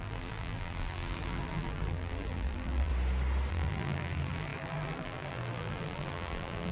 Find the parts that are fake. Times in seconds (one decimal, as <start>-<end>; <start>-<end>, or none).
0.0-2.9; 3.5-6.7